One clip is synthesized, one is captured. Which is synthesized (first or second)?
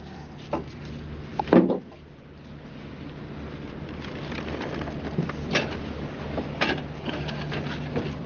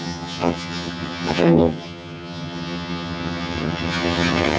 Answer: second